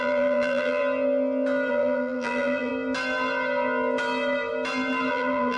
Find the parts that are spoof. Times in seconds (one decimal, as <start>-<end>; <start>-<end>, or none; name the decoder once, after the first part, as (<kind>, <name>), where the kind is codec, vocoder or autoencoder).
0.0-0.8 (vocoder, BigVGAN v2); 1.7-2.7; 5.1-5.6